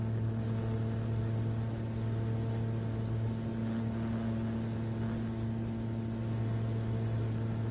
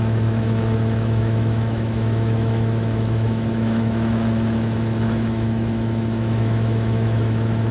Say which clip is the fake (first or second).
second